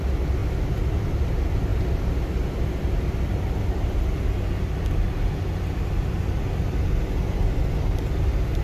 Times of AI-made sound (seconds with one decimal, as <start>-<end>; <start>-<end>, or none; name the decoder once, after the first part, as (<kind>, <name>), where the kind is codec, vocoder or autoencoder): none